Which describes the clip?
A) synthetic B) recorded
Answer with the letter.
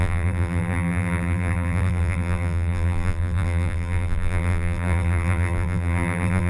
A